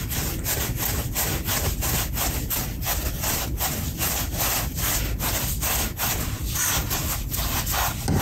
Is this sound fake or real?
real